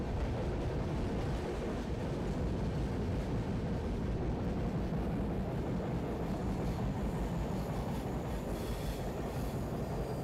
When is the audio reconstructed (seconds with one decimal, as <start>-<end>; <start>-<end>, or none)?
6.4-7.1